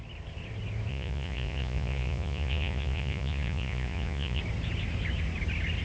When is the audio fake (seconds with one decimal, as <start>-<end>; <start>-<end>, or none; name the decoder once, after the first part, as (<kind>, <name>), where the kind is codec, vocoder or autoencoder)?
0.9-4.4 (vocoder, Vocos)